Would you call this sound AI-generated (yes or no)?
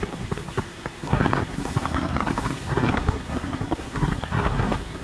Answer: yes